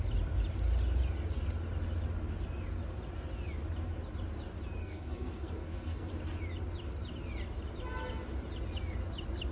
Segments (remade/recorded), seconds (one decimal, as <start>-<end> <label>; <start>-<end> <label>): 0.0-4.8 recorded; 4.8-6.1 remade; 6.1-9.5 recorded